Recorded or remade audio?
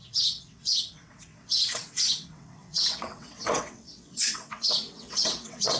remade